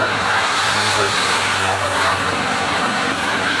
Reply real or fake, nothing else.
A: fake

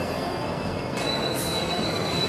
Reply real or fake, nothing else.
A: fake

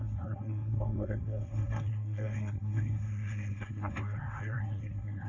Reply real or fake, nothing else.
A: fake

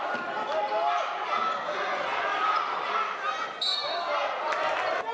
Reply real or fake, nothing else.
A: real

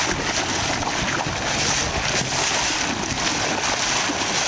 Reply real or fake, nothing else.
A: real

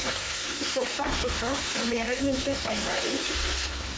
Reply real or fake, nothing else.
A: fake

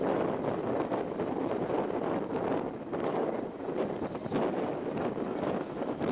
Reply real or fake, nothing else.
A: real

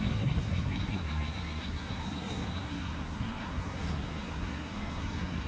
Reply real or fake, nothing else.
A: fake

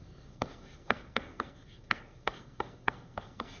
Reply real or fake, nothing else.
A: fake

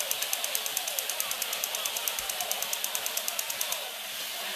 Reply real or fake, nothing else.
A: real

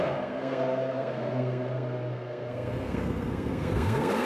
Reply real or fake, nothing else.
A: fake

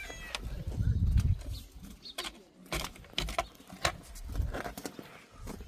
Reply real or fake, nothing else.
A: real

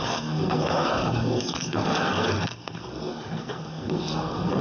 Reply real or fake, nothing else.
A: fake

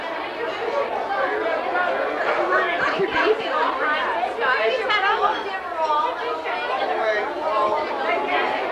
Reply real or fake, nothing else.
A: real